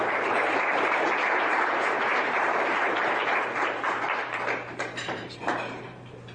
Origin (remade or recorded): remade